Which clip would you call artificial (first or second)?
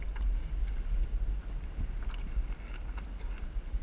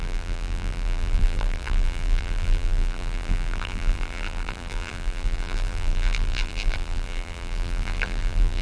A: second